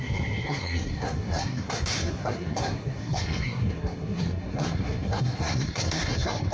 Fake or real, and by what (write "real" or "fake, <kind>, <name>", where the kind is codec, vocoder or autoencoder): fake, codec, SNAC